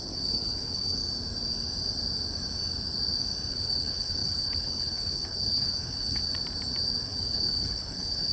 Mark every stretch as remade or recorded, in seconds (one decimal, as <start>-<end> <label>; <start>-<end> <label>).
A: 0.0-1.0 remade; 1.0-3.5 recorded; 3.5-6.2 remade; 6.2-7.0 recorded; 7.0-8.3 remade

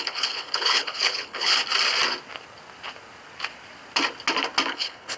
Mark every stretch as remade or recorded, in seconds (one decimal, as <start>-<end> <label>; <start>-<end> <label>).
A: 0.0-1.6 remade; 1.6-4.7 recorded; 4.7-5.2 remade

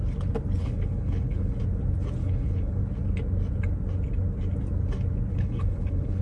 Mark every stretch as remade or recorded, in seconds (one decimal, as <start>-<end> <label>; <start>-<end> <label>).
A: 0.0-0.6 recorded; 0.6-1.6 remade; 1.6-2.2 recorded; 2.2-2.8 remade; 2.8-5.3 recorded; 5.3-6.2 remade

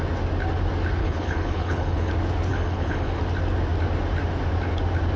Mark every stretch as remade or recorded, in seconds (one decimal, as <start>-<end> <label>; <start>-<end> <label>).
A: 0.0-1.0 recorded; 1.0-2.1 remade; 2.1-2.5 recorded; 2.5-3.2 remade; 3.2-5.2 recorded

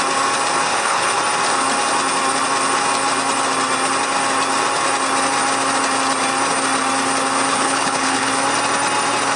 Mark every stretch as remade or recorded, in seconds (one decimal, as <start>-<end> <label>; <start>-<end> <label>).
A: 0.0-0.7 recorded; 0.7-1.2 remade; 1.2-7.5 recorded; 7.5-8.3 remade; 8.3-9.4 recorded

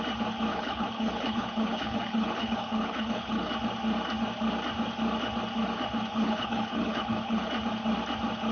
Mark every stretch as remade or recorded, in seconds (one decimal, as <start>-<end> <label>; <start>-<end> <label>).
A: 0.0-0.5 recorded; 0.5-3.5 remade; 3.5-6.1 recorded; 6.1-7.5 remade; 7.5-8.5 recorded

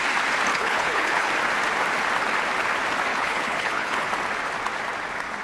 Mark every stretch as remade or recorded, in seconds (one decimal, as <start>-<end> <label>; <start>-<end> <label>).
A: 0.0-0.5 recorded; 0.5-1.3 remade; 1.3-3.1 recorded; 3.1-4.1 remade; 4.1-5.4 recorded